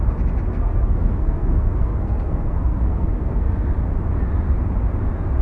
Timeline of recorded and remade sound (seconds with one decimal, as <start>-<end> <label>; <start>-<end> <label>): 0.0-0.5 recorded; 0.5-3.7 remade; 3.7-5.4 recorded